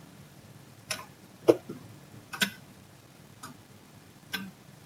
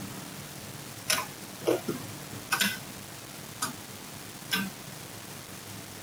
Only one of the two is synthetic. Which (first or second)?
first